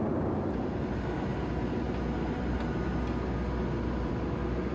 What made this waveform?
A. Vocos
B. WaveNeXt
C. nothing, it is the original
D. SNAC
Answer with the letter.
C